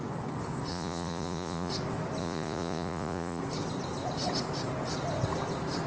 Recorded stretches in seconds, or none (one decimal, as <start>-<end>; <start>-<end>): 0.0-0.7; 1.7-2.2; 3.4-5.9